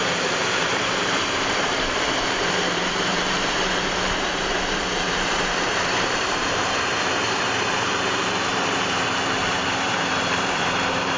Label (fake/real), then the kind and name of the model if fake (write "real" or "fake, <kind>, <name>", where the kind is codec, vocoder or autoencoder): fake, vocoder, BigVGAN v2